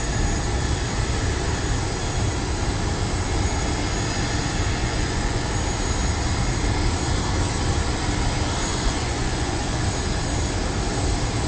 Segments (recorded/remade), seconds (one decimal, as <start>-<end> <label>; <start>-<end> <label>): 0.0-4.8 recorded; 4.8-5.5 remade; 5.5-8.7 recorded; 8.7-9.8 remade; 9.8-11.5 recorded